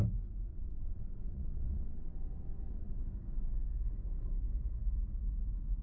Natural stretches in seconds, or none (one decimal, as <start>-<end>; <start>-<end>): 0.0-0.5; 3.0-5.8